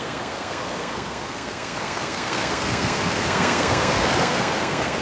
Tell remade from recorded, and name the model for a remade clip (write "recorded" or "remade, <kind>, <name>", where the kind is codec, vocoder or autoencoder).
remade, codec, SNAC